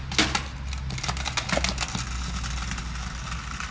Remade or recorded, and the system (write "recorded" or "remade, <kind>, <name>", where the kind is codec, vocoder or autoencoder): recorded